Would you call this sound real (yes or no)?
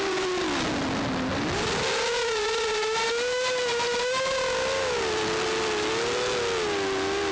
yes